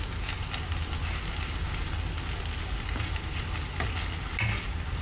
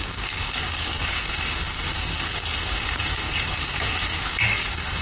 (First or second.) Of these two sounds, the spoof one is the second